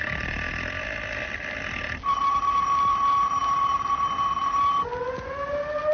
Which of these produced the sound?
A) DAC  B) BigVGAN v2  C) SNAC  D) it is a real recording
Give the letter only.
D